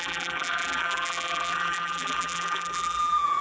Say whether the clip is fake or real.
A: fake